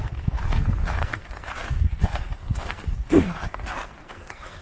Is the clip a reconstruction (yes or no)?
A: yes